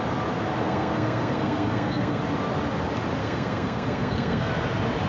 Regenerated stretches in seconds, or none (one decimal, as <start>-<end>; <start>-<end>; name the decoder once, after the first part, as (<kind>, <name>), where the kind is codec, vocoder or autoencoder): 0.6-2.2 (codec, SNAC); 3.2-4.5